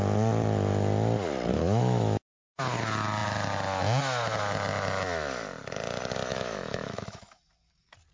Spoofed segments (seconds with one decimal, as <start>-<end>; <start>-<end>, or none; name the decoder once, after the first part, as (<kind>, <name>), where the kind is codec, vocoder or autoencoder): 1.5-2.6 (autoencoder, DAC-VAE); 6.3-7.4